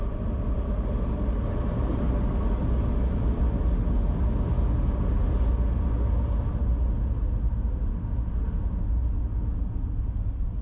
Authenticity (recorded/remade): recorded